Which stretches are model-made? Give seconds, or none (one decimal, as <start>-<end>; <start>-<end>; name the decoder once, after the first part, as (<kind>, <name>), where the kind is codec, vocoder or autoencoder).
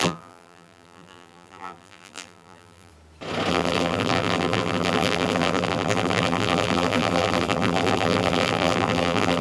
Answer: 0.0-2.9 (vocoder, BigVGAN v2); 3.5-9.4